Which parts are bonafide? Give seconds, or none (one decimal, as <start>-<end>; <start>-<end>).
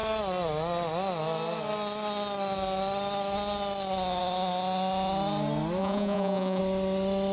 0.0-5.8; 6.6-7.3